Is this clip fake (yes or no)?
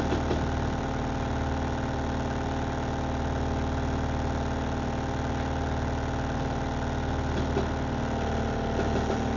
no